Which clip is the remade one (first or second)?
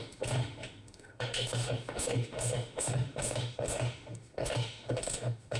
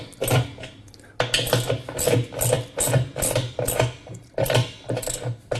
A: first